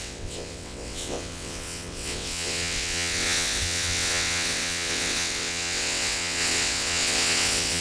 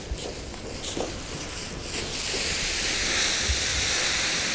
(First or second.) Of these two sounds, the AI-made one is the first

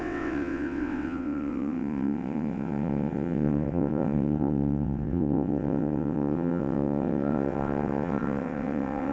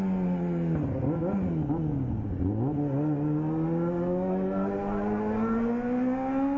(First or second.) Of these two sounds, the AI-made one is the first